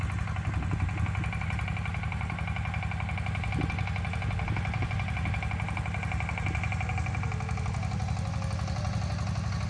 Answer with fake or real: real